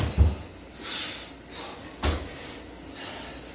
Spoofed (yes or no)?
no